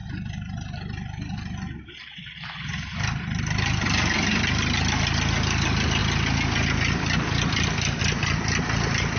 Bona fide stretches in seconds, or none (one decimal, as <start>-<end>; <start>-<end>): 0.0-9.2